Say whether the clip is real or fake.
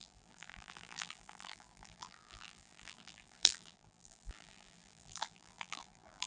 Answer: fake